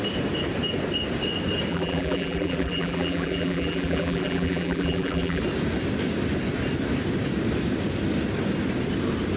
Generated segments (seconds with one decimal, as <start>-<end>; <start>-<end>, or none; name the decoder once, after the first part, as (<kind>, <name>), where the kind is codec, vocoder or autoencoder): 1.7-5.4 (vocoder, BigVGAN v2)